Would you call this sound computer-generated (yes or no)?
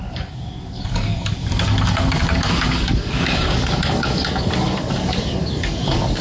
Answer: yes